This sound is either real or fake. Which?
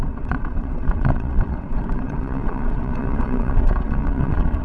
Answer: fake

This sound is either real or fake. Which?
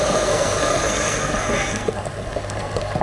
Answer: fake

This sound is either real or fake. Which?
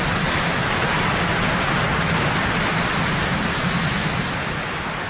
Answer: real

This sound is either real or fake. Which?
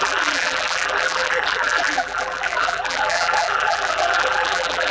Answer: fake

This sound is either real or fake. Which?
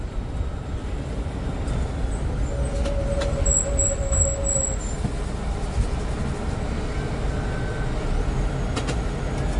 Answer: real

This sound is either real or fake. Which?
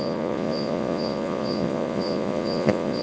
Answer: fake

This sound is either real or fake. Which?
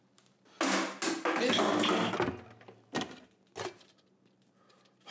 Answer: real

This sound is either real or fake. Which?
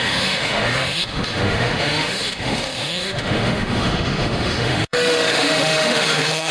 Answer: fake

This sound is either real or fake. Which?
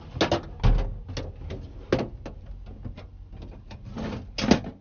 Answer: real